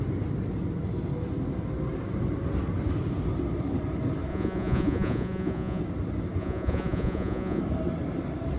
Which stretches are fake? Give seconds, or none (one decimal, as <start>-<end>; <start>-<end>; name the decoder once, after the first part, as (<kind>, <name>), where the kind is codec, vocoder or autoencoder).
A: 4.3-5.8 (vocoder, Vocos); 6.4-7.6